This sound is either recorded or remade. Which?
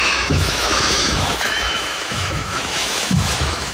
remade